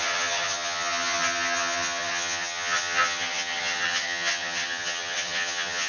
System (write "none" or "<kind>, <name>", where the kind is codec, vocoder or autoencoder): vocoder, HiFi-GAN